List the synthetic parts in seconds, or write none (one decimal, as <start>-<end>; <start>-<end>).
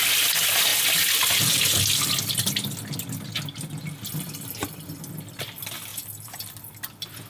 5.9-6.6